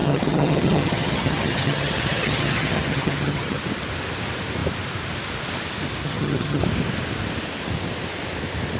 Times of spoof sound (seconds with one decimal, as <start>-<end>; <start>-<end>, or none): 0.0-3.6; 6.0-6.6